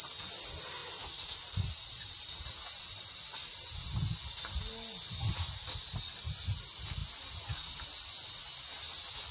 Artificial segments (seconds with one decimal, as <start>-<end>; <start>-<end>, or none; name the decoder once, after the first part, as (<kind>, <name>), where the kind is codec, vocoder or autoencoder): 0.8-2.8 (vocoder, BigVGAN v2)